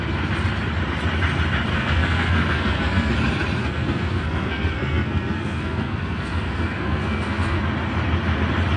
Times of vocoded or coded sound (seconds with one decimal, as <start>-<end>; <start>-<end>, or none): 1.7-3.1; 3.6-7.6